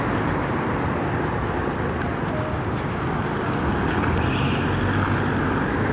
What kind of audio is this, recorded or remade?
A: recorded